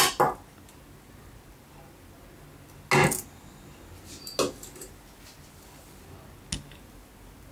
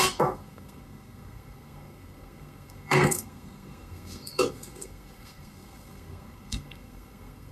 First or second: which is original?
first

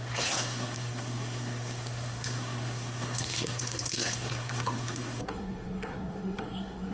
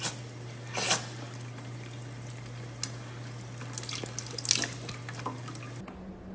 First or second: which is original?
second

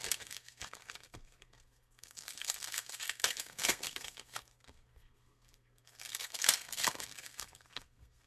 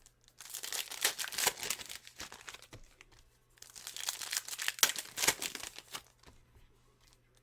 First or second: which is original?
second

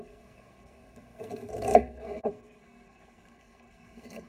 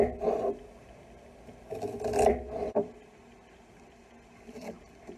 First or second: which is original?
second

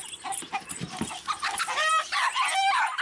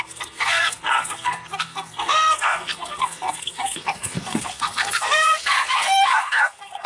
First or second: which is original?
first